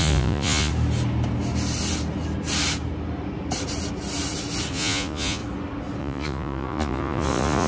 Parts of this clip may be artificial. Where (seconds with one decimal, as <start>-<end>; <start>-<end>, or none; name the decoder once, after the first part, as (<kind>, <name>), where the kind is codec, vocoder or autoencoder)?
0.0-0.7 (vocoder, Vocos); 4.7-5.4; 6.0-7.7